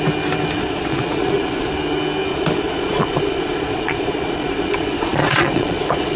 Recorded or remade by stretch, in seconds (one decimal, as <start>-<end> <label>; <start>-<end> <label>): 0.0-0.6 recorded; 0.6-1.7 remade; 1.7-2.3 recorded; 2.3-6.2 remade